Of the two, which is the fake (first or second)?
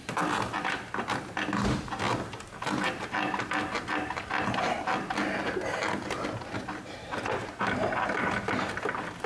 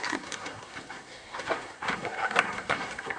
second